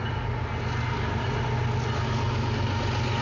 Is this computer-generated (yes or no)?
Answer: no